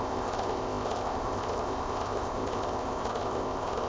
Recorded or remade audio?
remade